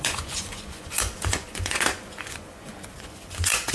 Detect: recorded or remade remade